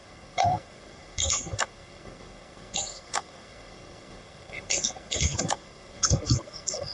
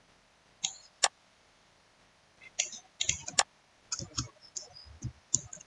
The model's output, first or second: first